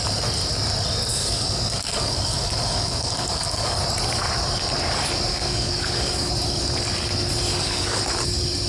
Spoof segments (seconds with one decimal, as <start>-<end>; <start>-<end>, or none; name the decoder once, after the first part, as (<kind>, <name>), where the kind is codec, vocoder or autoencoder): 1.1-3.8 (codec, DAC); 5.3-6.3; 7.5-8.0